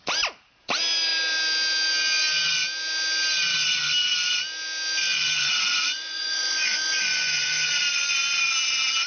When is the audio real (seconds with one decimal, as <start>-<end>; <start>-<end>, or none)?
0.0-5.1; 7.8-9.1